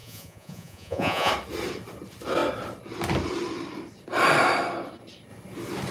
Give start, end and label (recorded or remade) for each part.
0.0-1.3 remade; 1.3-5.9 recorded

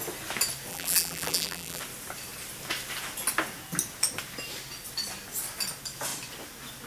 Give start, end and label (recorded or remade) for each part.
0.0-0.7 recorded; 0.7-1.8 remade; 1.8-6.9 recorded